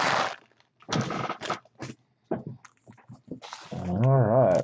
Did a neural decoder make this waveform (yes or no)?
no